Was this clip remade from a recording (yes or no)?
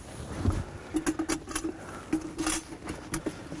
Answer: no